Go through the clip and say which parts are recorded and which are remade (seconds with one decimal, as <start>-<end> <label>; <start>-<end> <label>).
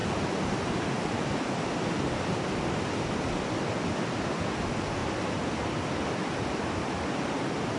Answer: 0.0-7.8 recorded